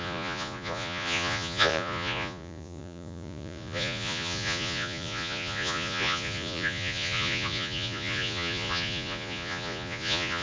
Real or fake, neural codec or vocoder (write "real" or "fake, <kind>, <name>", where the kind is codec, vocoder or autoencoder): fake, vocoder, Vocos